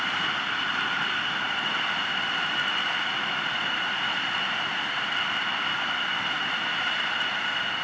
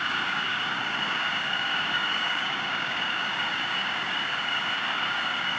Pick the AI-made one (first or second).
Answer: second